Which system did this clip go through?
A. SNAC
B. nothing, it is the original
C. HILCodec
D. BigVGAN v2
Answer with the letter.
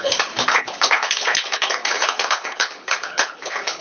C